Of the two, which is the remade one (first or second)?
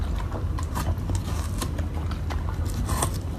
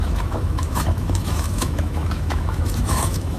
second